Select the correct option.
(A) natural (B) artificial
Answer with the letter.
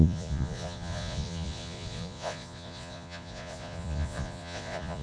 B